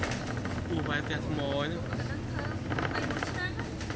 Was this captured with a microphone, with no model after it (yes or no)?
yes